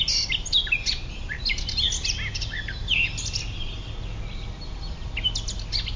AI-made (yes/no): no